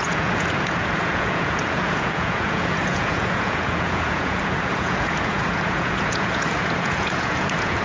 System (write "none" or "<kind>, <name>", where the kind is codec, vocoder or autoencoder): vocoder, Vocos